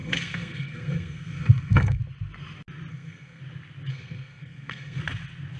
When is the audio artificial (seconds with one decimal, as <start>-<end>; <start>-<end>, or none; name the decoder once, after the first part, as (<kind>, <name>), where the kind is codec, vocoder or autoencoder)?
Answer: 0.0-2.0 (codec, SNAC); 2.9-3.4; 3.9-5.0